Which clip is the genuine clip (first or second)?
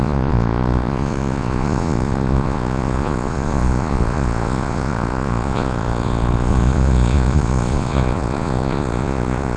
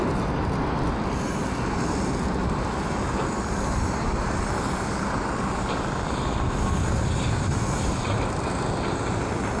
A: second